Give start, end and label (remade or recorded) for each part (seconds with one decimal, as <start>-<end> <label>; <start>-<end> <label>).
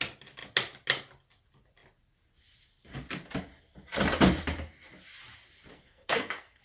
0.0-5.7 recorded; 5.7-6.6 remade